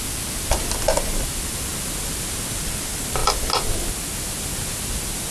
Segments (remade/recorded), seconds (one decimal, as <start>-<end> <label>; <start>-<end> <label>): 0.0-5.3 recorded